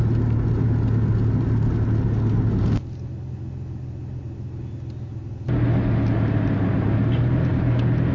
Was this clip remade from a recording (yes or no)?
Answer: no